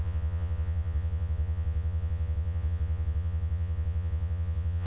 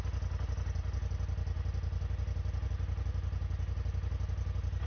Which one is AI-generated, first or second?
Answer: first